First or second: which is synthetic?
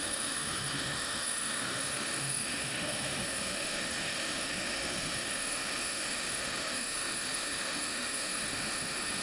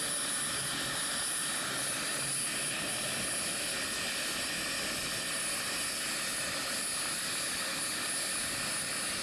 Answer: first